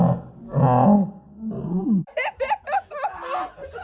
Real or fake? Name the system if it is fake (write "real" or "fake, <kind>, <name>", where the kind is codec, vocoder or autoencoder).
real